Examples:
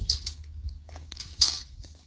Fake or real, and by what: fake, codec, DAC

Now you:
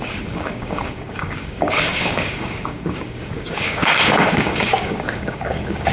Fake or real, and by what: fake, codec, DAC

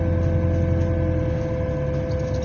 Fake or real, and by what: real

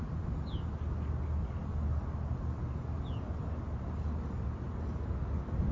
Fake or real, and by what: real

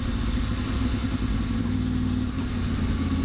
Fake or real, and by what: real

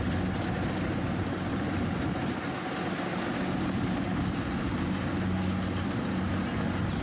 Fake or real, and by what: real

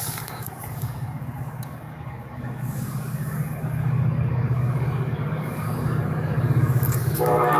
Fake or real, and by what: fake, codec, DAC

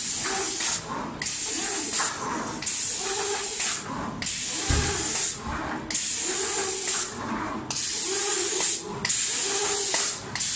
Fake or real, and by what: real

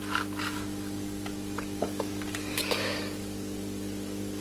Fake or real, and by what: fake, codec, DAC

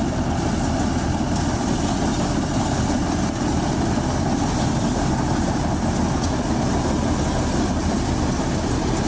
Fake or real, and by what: real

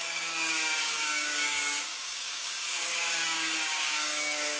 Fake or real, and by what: fake, codec, DAC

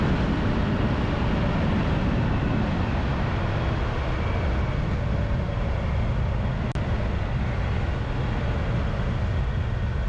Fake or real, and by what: real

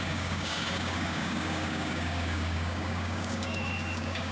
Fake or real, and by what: fake, codec, DAC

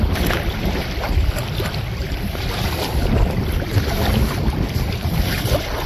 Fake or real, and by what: real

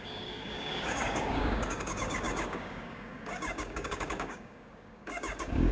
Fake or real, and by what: fake, codec, DAC